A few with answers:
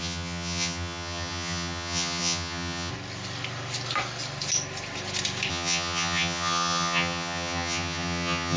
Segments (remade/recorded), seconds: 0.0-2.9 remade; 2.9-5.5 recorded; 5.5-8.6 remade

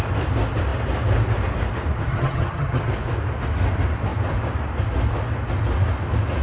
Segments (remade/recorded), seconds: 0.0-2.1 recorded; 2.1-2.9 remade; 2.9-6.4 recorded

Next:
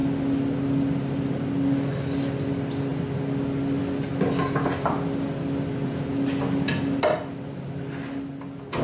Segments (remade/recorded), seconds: 0.0-8.8 recorded

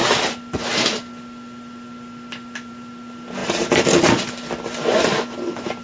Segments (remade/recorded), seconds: 0.0-5.8 recorded